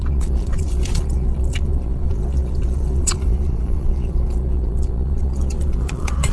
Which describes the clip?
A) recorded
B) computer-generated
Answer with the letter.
B